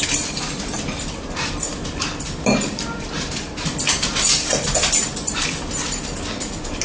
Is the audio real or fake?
fake